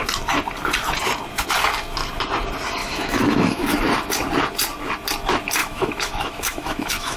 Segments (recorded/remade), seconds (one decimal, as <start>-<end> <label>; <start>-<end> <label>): 0.0-2.8 recorded; 2.8-3.8 remade; 3.8-5.6 recorded; 5.6-7.2 remade